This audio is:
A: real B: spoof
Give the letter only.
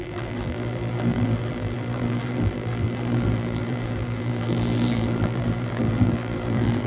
B